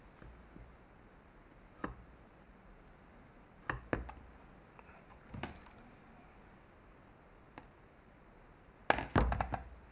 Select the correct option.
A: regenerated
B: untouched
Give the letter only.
B